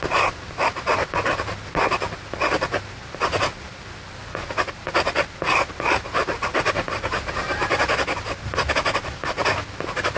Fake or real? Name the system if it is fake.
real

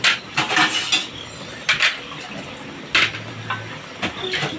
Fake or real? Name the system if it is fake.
real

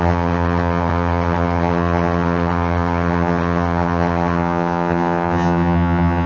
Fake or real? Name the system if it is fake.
fake, vocoder, HiFi-GAN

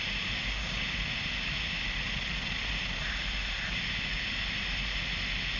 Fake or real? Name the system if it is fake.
real